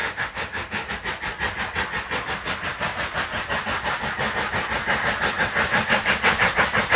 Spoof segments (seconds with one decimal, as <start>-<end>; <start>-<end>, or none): 0.0-0.9